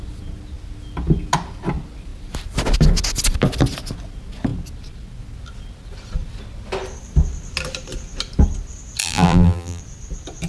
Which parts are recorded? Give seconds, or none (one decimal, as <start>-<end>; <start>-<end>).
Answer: 0.0-9.0; 9.8-10.5